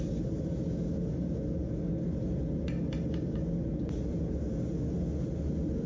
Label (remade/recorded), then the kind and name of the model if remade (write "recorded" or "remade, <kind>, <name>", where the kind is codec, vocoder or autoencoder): recorded